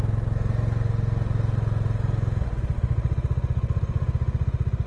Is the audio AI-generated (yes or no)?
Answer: no